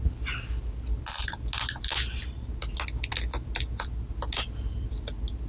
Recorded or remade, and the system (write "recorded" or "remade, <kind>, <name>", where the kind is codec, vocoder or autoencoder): recorded